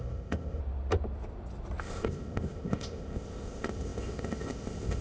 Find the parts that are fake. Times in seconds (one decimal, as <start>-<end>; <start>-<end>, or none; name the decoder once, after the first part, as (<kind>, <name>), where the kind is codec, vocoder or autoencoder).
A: 0.0-0.6 (codec, ZipCodec); 1.8-5.0